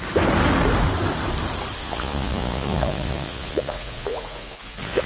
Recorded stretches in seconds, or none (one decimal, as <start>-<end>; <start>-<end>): 0.0-1.8